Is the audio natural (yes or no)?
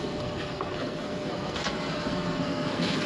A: no